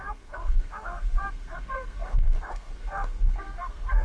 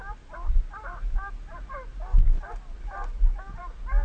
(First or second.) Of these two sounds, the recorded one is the second